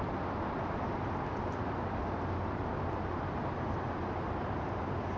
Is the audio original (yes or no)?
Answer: no